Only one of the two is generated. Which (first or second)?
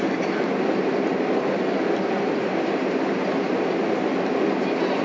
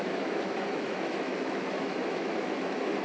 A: second